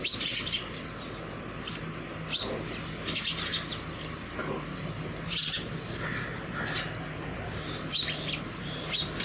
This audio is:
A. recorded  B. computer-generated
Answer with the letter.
A